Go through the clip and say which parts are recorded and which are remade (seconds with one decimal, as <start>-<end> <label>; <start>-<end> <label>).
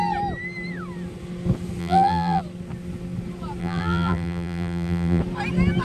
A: 0.0-1.8 recorded; 1.8-2.4 remade; 2.4-3.6 recorded; 3.6-5.2 remade; 5.2-5.8 recorded